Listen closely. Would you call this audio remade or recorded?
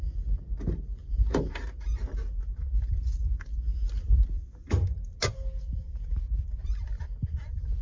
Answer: recorded